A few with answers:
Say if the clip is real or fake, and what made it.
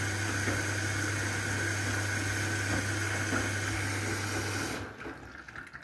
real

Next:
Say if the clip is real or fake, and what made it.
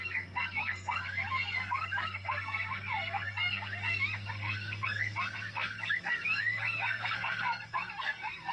fake, codec, SNAC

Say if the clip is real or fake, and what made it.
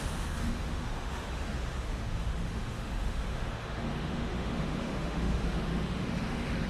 fake, autoencoder, DAC-VAE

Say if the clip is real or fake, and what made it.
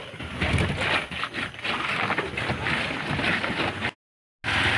real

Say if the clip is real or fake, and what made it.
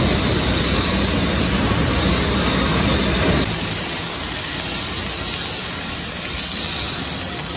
real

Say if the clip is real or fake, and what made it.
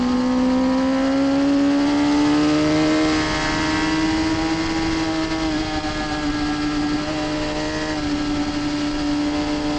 real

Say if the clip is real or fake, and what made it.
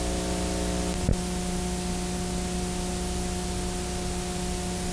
real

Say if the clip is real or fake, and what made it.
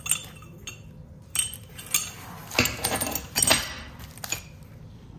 real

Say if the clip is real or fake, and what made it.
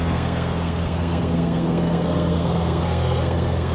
fake, codec, SNAC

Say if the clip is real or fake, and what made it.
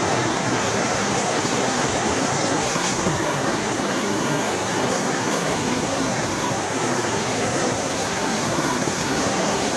fake, codec, SNAC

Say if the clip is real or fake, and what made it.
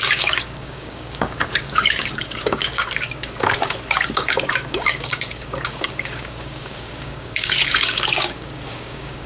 fake, codec, DAC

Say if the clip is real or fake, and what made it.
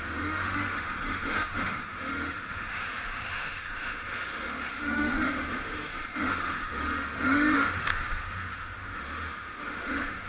fake, autoencoder, DAC-VAE